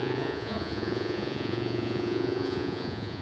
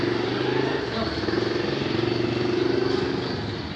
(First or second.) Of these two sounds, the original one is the second